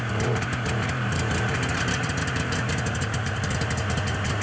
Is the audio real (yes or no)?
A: no